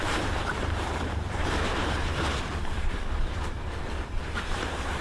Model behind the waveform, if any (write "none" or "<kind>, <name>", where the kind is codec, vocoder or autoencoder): vocoder, BigVGAN v2